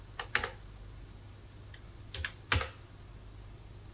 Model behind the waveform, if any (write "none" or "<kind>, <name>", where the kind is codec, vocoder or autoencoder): none